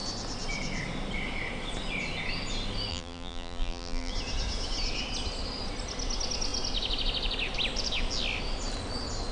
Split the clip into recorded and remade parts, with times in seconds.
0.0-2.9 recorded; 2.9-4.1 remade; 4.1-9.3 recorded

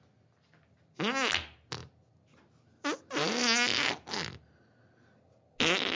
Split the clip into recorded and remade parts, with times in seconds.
0.0-6.0 recorded

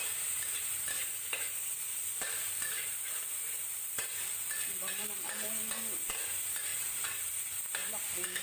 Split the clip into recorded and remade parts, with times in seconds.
0.0-2.1 recorded; 2.1-6.2 remade; 6.2-6.7 recorded; 6.7-8.4 remade

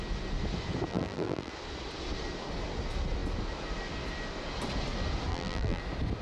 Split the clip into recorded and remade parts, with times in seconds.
0.0-0.9 recorded; 0.9-1.5 remade; 1.5-5.3 recorded; 5.3-5.8 remade; 5.8-6.2 recorded

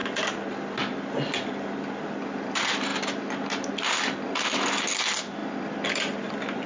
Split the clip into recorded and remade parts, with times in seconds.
0.0-6.7 recorded

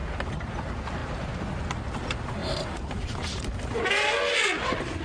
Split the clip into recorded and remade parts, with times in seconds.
0.0-2.4 recorded; 2.4-3.0 remade; 3.0-5.0 recorded

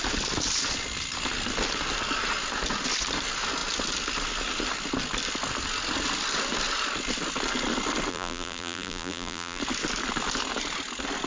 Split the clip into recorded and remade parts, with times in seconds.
0.0-8.1 recorded; 8.1-9.6 remade; 9.6-11.3 recorded